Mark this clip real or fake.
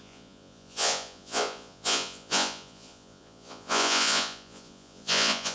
fake